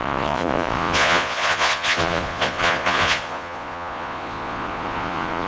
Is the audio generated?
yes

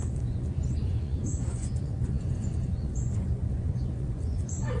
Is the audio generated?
yes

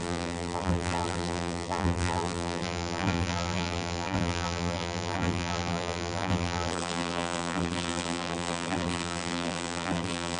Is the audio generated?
yes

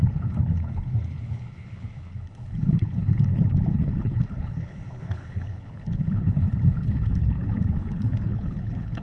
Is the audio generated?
yes